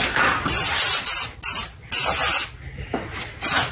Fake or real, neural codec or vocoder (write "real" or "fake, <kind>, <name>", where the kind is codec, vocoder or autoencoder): real